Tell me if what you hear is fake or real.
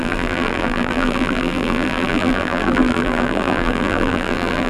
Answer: fake